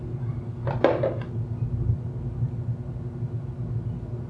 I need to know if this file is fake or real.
real